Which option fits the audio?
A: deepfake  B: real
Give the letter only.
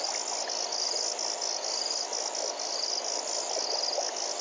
B